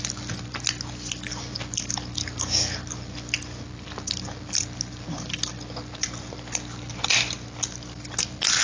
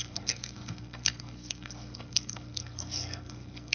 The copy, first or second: second